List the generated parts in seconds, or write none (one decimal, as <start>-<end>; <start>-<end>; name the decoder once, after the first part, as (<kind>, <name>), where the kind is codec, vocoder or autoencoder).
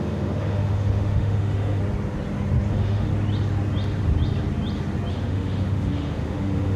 0.0-1.8 (autoencoder, DAC-VAE); 2.7-3.1; 5.1-6.8